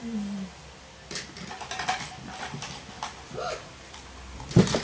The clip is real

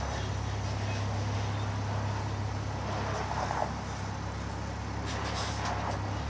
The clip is real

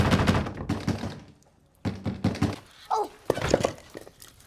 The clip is real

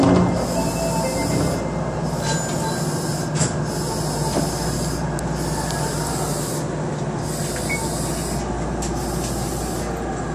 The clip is real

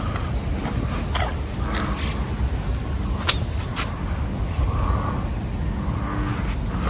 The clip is real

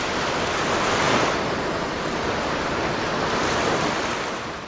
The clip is real